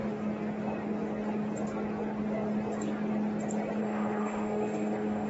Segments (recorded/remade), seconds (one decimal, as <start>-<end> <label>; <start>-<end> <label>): 0.0-3.8 recorded; 3.8-5.3 remade